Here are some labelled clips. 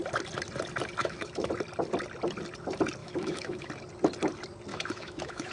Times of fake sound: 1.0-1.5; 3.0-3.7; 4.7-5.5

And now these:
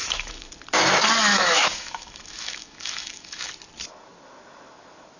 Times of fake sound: 0.0-0.5; 1.3-3.5

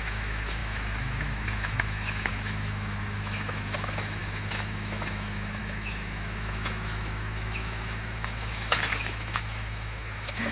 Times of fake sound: 0.0-10.5

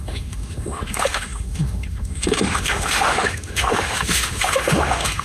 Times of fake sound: 0.0-5.2

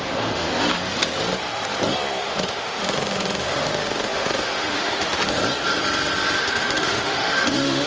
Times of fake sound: 0.0-0.5; 2.2-5.4; 6.4-7.9

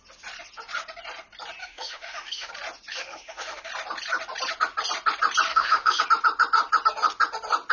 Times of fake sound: 1.6-2.5; 2.9-3.7; 5.5-6.0

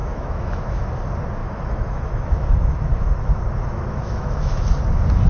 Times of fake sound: 0.0-0.9; 1.4-4.6